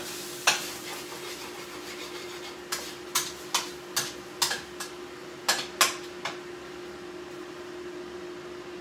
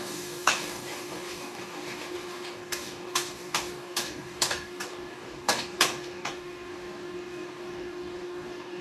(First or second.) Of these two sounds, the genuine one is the first